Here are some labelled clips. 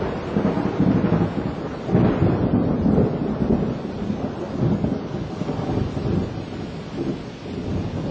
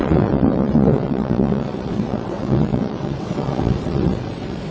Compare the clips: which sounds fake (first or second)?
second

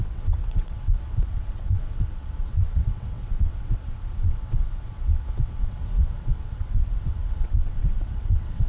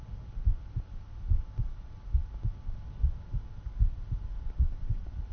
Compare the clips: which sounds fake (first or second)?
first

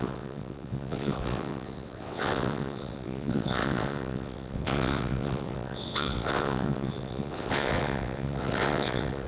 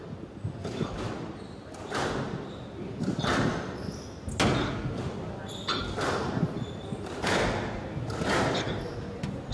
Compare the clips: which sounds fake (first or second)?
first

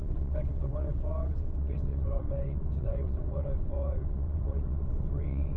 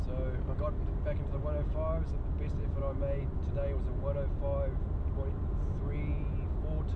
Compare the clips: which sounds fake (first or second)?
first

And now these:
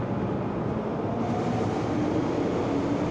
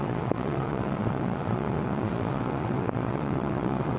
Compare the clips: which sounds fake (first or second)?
second